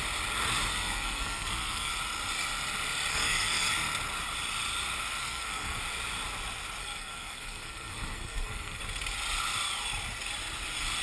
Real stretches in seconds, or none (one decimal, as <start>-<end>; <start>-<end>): 0.0-0.7; 1.9-3.1; 3.7-5.2; 5.8-6.8; 8.8-11.0